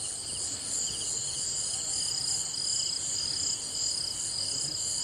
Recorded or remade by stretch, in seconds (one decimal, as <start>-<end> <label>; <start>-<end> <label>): 0.0-5.0 recorded